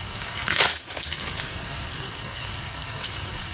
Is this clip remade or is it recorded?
remade